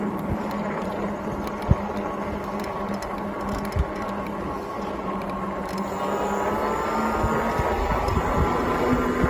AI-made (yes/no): no